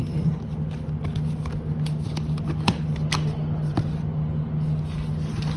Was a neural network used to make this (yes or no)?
no